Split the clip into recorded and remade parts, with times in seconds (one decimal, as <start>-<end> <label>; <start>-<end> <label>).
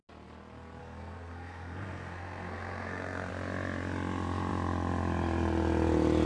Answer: 0.0-0.8 recorded; 0.8-3.3 remade; 3.3-6.3 recorded